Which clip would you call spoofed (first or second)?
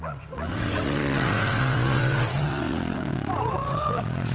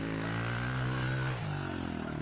first